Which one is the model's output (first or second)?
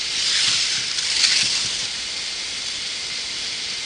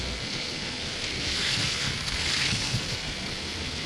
second